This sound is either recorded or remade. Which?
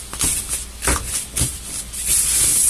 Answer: recorded